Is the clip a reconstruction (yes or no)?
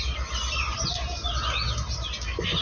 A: no